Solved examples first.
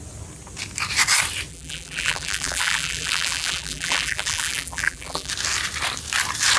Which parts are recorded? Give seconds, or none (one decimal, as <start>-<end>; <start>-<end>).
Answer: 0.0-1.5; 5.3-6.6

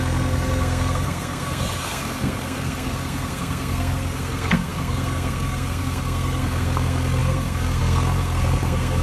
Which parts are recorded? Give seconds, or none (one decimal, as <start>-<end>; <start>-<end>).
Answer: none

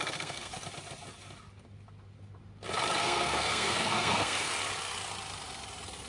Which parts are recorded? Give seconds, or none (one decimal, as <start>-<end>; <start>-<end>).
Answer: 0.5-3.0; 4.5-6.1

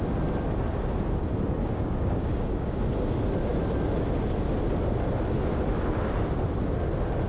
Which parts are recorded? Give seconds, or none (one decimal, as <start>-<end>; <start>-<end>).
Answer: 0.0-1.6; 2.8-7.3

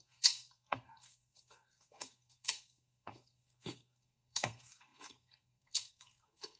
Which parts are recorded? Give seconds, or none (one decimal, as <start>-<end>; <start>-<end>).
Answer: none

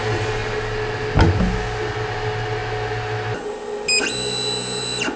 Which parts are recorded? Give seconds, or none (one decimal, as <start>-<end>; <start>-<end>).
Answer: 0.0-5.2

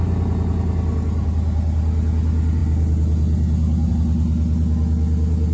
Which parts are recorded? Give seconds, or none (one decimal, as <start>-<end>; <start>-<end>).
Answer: 0.0-5.5